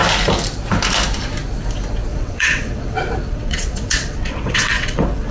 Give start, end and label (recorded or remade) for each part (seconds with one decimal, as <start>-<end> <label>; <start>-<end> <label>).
0.0-2.1 recorded; 2.1-5.3 remade